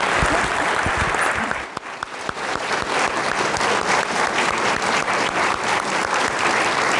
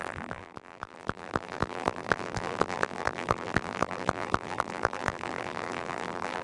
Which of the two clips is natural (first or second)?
first